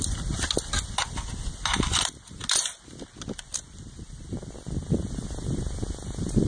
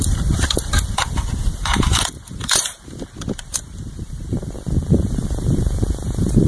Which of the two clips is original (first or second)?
first